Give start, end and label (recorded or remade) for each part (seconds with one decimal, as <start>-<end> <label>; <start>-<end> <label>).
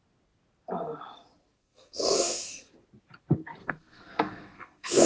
0.0-1.6 recorded; 1.6-2.7 remade; 2.7-3.6 recorded; 3.6-5.1 remade